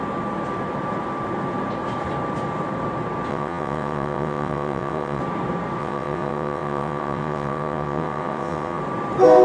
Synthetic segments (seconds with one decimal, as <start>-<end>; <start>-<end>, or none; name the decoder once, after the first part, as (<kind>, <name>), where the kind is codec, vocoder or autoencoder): 3.3-5.2 (vocoder, WaveNeXt); 5.8-8.8